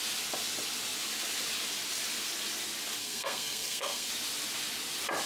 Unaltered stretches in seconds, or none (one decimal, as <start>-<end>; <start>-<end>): 0.0-3.0; 4.1-5.3